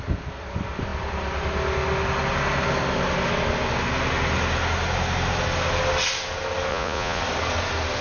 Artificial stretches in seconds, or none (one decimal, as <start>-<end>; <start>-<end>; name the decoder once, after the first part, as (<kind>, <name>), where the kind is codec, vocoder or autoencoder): 6.7-7.2 (vocoder, Vocos)